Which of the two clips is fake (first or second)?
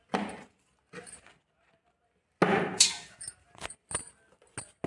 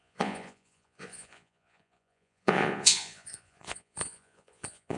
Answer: second